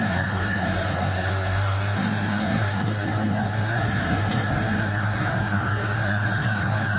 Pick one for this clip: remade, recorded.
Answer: remade